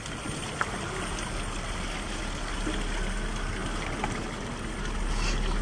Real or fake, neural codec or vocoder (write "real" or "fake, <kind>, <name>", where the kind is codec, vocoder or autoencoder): real